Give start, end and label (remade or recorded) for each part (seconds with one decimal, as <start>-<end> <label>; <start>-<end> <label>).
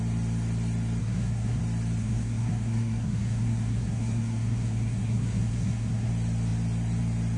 0.0-1.0 recorded; 1.0-1.6 remade; 1.6-2.0 recorded; 2.0-6.1 remade; 6.1-7.4 recorded